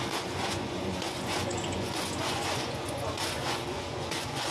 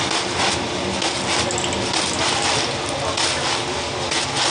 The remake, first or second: first